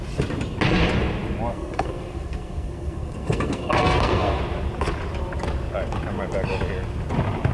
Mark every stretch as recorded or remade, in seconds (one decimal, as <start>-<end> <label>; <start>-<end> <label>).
0.0-1.5 recorded; 1.5-4.4 remade; 4.4-7.5 recorded